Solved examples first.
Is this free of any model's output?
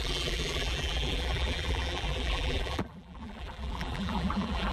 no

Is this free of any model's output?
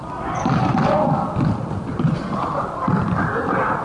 yes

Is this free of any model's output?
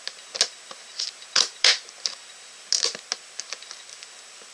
yes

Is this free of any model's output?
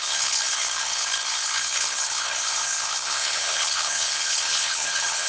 no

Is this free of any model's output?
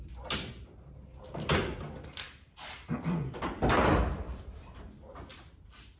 yes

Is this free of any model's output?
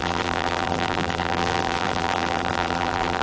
no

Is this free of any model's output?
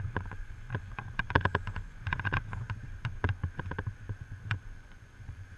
no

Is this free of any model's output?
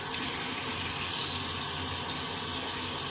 yes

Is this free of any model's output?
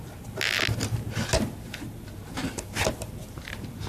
yes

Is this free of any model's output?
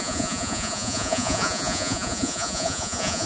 no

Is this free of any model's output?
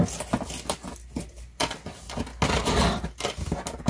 yes